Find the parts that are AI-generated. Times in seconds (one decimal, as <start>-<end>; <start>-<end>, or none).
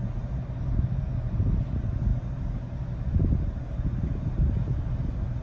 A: none